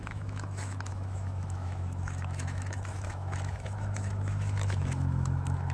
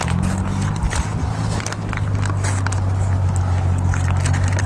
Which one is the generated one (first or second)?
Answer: first